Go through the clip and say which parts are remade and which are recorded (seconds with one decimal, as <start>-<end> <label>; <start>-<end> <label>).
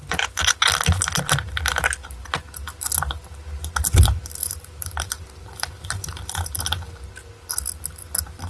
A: 0.0-4.4 recorded; 4.4-6.6 remade; 6.6-8.5 recorded